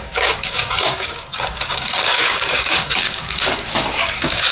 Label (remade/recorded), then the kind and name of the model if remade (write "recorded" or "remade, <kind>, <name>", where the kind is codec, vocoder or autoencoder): remade, codec, DAC